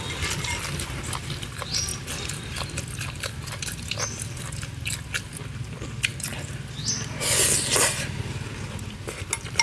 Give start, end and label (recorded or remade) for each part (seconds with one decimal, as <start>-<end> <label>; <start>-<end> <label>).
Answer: 0.0-9.6 recorded